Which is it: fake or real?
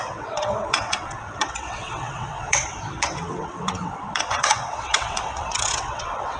fake